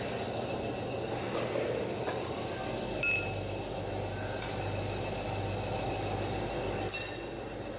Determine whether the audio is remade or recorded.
recorded